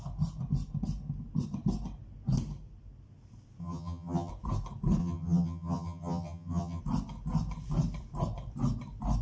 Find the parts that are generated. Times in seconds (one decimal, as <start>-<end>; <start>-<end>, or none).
3.6-4.3; 5.0-6.8